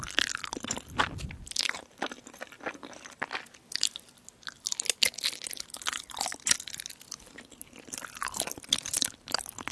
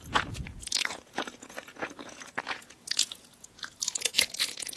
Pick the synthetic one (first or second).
second